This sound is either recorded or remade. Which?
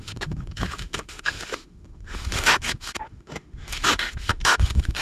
remade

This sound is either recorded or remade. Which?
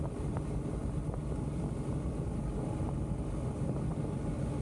recorded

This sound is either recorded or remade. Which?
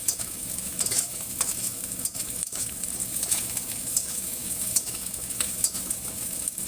remade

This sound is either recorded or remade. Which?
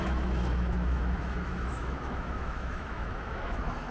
remade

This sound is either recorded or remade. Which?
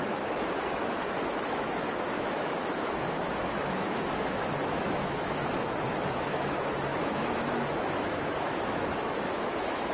remade